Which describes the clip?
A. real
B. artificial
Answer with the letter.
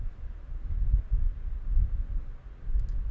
A